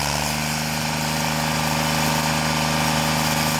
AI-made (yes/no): no